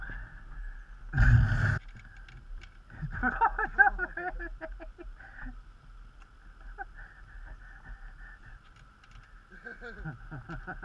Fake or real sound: real